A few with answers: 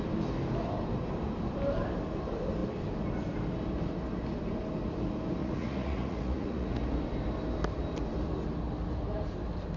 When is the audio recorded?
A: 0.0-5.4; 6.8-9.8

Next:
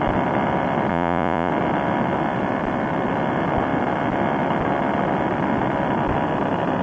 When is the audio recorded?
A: 0.0-0.9; 1.5-6.8

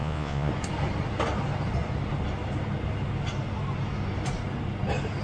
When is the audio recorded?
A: 0.5-5.2

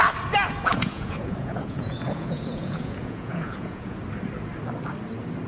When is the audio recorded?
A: 0.0-0.7; 4.0-5.5

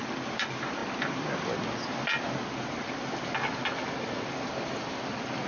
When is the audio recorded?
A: 0.0-5.5

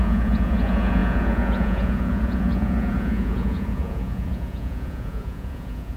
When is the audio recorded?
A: none